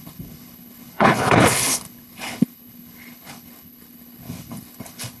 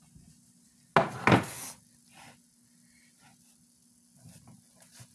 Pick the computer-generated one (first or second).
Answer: first